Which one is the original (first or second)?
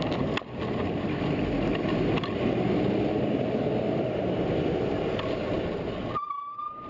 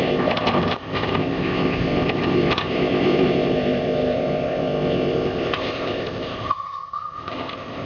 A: first